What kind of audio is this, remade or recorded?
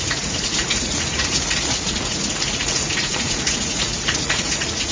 remade